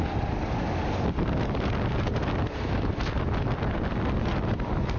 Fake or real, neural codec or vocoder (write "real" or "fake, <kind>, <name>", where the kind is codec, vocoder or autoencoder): real